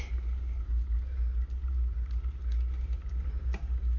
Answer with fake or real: real